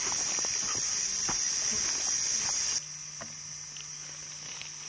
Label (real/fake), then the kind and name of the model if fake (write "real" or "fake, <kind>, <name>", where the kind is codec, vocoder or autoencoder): real